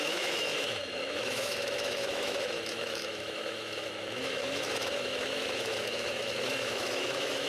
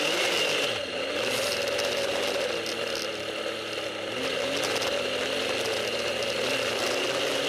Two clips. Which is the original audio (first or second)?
second